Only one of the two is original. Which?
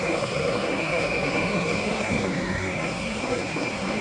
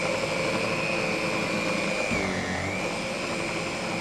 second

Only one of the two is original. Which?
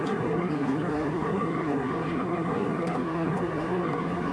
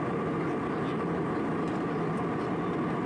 second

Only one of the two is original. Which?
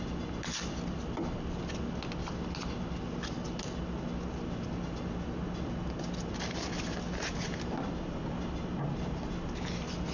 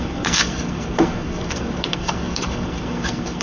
first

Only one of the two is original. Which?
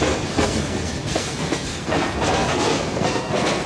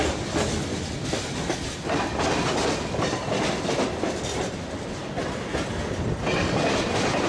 second